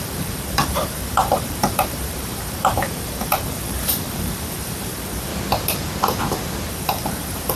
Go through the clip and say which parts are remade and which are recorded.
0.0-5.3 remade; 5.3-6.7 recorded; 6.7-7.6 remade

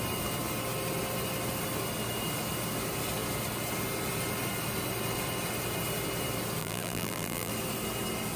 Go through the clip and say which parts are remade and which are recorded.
0.0-6.6 recorded; 6.6-7.5 remade; 7.5-8.4 recorded